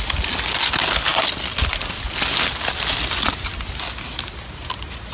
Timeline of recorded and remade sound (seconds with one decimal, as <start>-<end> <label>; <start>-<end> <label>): 0.0-5.1 recorded

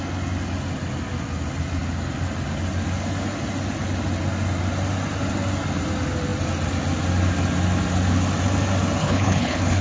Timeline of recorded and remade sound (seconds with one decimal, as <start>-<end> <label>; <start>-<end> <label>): 0.0-9.0 recorded; 9.0-9.8 remade

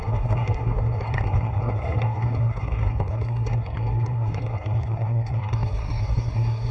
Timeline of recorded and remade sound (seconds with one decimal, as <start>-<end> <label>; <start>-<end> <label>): 0.0-6.7 remade

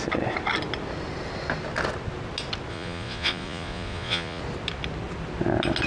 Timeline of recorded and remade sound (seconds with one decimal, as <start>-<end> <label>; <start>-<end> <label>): 0.0-2.7 recorded; 2.7-4.4 remade; 4.4-5.9 recorded

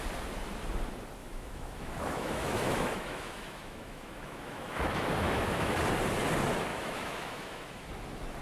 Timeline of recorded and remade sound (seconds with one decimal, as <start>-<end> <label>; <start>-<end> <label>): 0.0-1.2 recorded; 1.2-5.8 remade; 5.8-6.7 recorded; 6.7-7.9 remade; 7.9-8.4 recorded

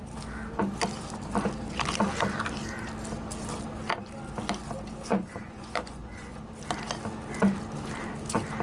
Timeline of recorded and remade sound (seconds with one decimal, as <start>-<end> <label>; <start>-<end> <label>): 0.0-5.1 recorded; 5.1-6.4 remade; 6.4-8.6 recorded

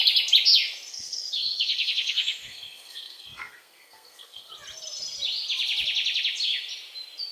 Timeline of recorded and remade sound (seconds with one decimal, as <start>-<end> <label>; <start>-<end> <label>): 0.0-0.9 recorded; 0.9-4.5 remade; 4.5-7.3 recorded